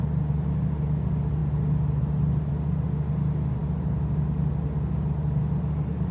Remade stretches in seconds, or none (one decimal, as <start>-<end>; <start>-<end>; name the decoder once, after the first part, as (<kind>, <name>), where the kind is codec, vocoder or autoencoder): none